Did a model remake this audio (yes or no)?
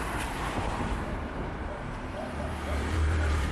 yes